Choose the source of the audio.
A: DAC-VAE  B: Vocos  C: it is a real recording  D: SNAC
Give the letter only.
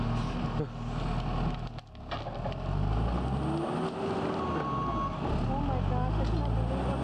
C